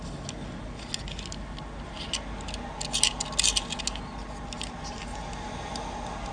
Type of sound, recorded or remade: recorded